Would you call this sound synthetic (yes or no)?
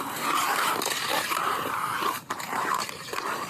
yes